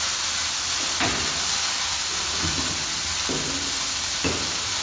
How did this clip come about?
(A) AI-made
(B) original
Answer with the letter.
B